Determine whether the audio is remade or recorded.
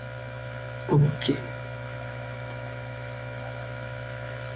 remade